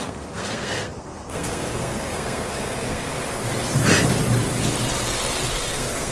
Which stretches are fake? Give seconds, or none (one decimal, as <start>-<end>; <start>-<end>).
0.0-3.1; 5.5-6.1